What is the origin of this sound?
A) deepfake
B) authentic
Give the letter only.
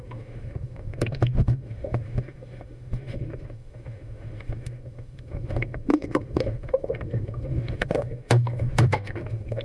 A